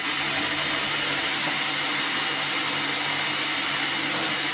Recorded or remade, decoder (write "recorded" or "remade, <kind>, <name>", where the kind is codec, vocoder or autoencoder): recorded